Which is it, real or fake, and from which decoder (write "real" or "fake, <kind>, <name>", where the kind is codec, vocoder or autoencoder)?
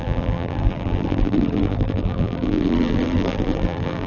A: fake, vocoder, BigVGAN v2